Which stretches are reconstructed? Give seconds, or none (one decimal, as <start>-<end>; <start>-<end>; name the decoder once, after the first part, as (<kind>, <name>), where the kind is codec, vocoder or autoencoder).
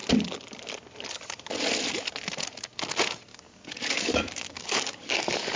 3.3-5.6 (codec, DAC)